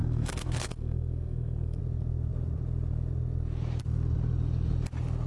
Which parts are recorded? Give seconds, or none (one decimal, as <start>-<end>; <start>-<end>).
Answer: 1.8-5.3